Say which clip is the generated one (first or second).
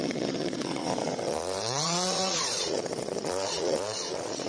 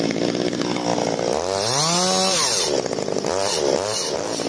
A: first